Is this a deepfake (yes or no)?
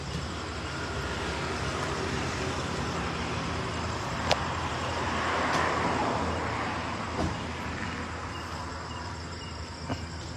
no